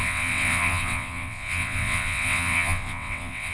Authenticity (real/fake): fake